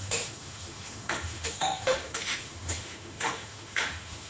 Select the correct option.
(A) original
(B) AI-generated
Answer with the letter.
B